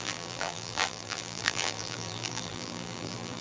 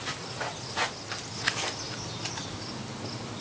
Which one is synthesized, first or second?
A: first